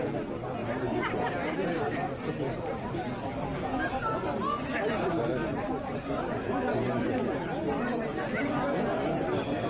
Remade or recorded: recorded